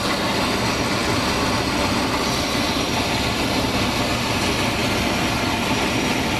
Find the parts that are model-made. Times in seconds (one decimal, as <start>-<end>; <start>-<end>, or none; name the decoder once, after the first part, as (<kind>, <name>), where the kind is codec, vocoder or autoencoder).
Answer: none